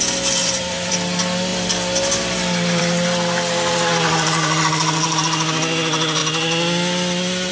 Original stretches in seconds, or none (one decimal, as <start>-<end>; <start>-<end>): 0.0-0.4; 0.9-7.5